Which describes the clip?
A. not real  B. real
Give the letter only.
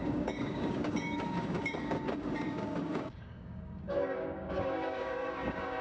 A